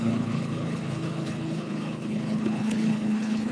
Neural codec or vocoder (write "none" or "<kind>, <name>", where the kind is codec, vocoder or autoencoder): codec, HILCodec